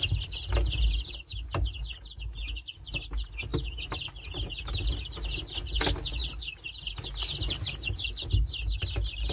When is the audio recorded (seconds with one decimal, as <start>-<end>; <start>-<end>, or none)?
0.0-9.3